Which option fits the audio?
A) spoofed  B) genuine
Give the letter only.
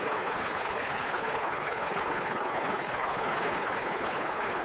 A